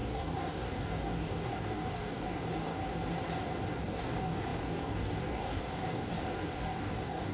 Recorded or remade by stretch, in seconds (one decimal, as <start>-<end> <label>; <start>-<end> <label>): 0.0-2.8 remade; 2.8-3.8 recorded; 3.8-7.3 remade